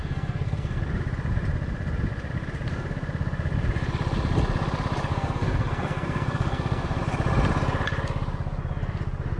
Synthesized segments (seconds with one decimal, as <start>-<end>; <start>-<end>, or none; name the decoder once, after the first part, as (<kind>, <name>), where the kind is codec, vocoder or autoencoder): 0.0-0.8 (codec, SNAC); 5.1-7.0